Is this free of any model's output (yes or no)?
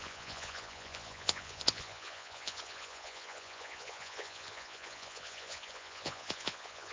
no